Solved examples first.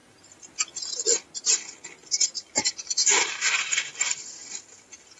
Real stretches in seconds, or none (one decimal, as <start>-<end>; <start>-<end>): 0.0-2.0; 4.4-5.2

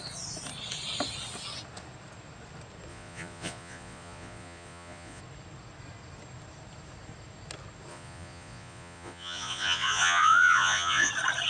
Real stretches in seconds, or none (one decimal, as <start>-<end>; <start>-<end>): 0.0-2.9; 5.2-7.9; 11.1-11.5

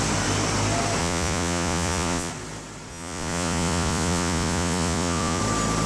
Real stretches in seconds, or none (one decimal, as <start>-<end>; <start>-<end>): 0.0-1.0; 2.3-2.9; 5.4-5.9

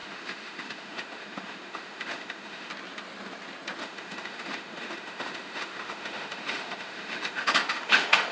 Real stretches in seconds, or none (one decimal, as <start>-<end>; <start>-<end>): 2.7-3.8

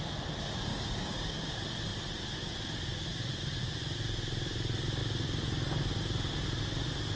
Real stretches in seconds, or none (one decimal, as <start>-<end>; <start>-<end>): 0.0-0.7; 1.5-7.2

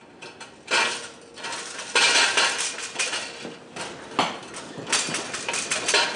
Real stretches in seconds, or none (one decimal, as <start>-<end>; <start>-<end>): 0.0-6.2

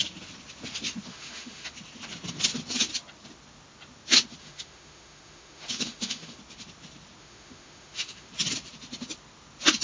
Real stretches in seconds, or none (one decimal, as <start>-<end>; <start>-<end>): 0.0-1.1; 1.7-4.4; 6.4-7.2; 8.3-9.8

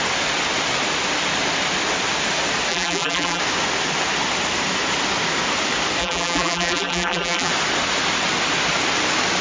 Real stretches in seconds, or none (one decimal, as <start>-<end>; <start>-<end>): 0.0-2.7; 3.4-6.0; 7.5-9.4